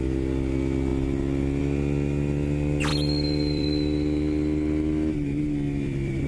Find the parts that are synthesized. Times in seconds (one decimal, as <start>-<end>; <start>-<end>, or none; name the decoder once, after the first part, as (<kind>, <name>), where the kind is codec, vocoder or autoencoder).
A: 2.9-6.3 (vocoder, BigVGAN v2)